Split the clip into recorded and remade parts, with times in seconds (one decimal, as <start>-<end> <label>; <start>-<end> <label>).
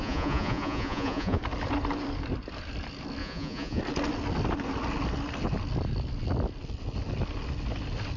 0.0-1.4 remade; 1.4-3.2 recorded; 3.2-3.8 remade; 3.8-8.2 recorded